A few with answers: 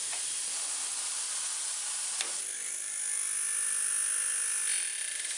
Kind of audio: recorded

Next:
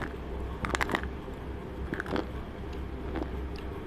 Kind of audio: recorded